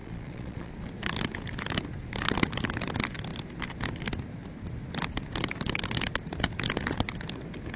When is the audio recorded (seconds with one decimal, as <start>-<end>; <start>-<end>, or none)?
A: 0.7-7.8